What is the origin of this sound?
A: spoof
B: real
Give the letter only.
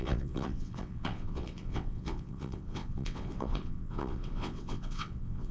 A